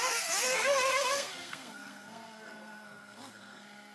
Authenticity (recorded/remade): remade